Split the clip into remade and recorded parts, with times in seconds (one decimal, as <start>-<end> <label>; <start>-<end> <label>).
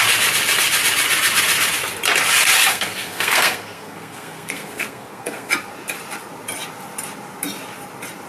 0.0-2.7 recorded; 2.7-5.5 remade; 5.5-8.3 recorded